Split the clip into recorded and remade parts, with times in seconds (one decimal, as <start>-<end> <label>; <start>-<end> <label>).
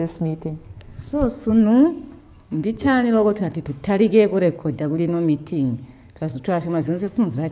0.0-7.5 remade